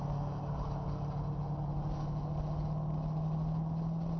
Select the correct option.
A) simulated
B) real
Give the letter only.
B